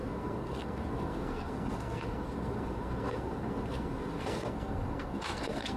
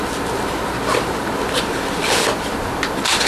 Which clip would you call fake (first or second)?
first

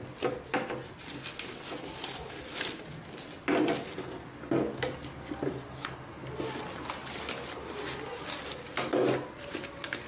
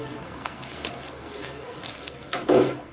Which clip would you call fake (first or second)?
second